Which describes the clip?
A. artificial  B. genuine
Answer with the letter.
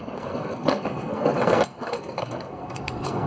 A